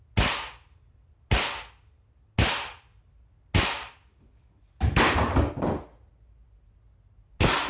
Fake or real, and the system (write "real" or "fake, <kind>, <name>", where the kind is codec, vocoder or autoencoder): real